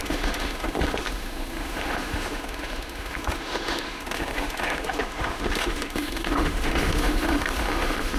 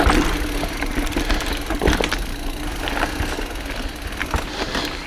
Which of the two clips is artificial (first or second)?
first